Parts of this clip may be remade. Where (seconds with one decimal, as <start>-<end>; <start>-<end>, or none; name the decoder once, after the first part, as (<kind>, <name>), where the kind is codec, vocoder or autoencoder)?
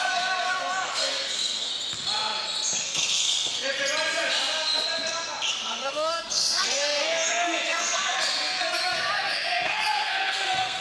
0.0-1.7 (codec, SNAC); 2.8-3.7; 5.5-10.8